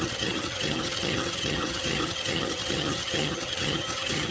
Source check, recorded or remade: remade